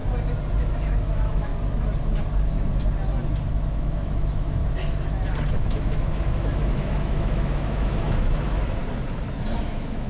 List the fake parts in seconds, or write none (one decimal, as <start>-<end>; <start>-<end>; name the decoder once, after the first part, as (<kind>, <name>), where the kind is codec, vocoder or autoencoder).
0.6-1.5 (autoencoder, DAC-VAE); 3.5-4.6; 5.7-8.8; 9.6-10.1